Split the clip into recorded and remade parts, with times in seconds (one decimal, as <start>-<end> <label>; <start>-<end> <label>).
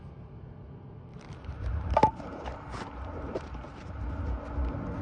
0.0-1.1 recorded; 1.1-4.1 remade; 4.1-5.0 recorded